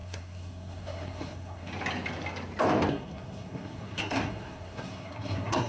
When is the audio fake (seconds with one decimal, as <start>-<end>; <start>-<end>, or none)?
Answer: 0.0-1.7; 2.9-5.7